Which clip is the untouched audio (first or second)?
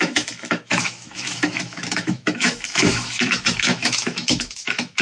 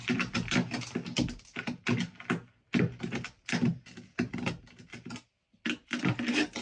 second